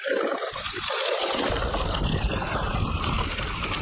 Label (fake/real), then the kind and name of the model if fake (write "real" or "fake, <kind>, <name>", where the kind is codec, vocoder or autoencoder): real